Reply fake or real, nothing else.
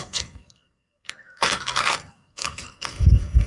fake